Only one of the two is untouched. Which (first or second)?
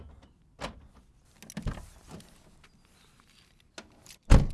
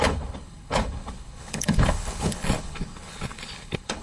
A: first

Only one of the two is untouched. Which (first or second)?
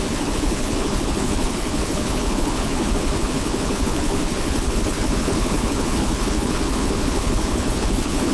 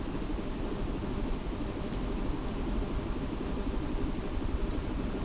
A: second